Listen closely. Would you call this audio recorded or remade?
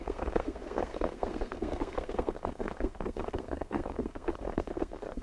remade